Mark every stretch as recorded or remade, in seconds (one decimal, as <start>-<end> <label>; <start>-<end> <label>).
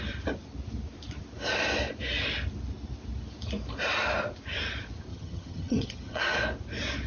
0.0-5.1 recorded; 5.1-6.2 remade; 6.2-7.1 recorded